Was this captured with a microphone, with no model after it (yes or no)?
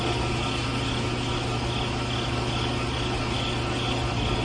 yes